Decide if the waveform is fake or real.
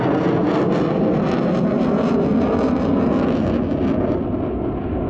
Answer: real